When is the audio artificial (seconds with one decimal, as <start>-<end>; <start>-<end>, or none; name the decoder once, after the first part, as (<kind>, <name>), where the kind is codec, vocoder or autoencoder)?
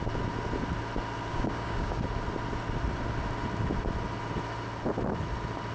1.3-2.0 (codec, DAC)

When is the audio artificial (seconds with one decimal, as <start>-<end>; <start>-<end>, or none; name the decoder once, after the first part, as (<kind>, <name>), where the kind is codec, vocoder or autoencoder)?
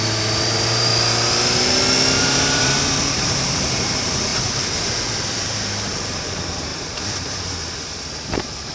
0.0-0.9 (vocoder, BigVGAN v2); 2.2-4.3; 5.3-8.7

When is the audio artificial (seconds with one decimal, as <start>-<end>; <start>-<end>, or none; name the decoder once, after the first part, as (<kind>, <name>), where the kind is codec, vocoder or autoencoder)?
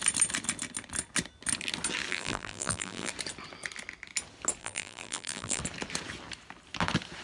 2.1-3.1 (vocoder, BigVGAN v2); 4.6-5.6